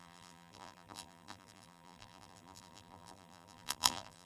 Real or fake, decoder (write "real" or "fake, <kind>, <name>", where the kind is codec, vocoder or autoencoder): fake, vocoder, BigVGAN v2